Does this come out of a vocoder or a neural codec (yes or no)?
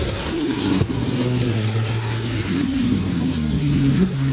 yes